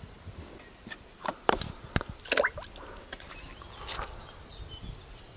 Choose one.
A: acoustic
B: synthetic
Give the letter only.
A